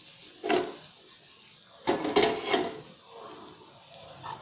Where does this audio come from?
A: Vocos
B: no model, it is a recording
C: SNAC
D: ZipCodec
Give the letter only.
B